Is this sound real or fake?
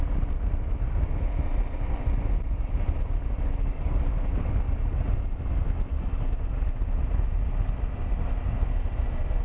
real